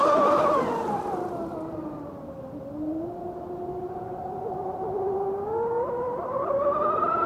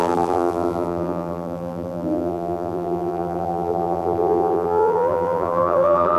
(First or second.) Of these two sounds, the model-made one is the second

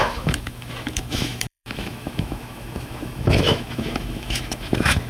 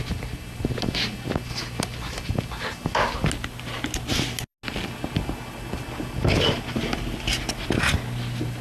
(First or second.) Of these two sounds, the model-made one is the first